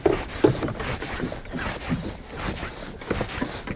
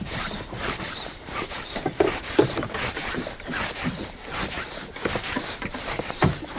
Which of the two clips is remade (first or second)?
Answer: second